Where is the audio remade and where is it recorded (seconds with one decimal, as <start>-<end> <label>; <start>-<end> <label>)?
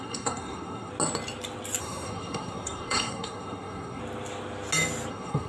0.0-0.9 remade; 0.9-1.8 recorded; 1.8-4.0 remade; 4.0-5.1 recorded; 5.1-5.5 remade